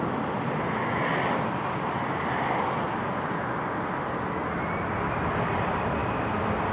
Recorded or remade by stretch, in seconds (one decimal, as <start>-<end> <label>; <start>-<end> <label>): 0.0-6.7 recorded